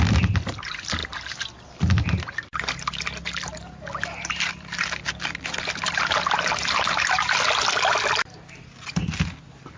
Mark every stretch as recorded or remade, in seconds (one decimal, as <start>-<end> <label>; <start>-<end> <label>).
0.0-9.8 recorded